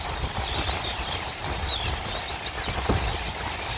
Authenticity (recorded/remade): recorded